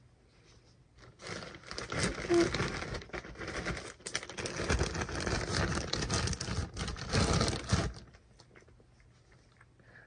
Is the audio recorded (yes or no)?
yes